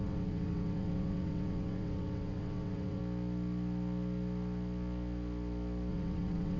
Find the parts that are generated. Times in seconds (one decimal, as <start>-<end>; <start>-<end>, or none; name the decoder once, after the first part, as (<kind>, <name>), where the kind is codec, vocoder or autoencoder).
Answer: 0.0-3.0 (vocoder, WaveNeXt); 5.9-6.6